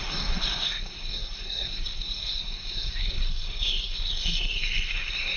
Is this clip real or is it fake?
fake